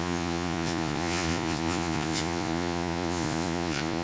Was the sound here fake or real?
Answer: fake